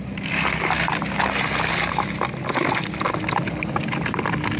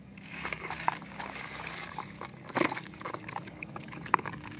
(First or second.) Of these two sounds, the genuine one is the first